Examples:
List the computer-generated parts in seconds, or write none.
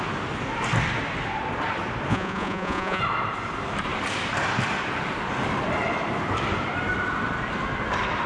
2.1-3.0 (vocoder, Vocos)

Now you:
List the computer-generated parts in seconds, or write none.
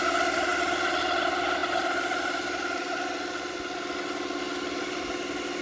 none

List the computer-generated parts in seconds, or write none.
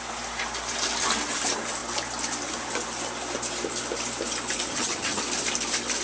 4.7-5.2 (vocoder, HiFi-GAN)